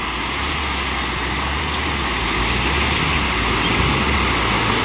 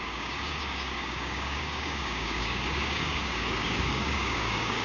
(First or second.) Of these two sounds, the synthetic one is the second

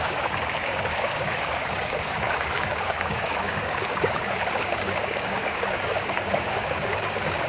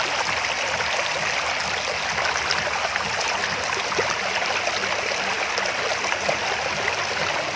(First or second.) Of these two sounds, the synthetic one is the first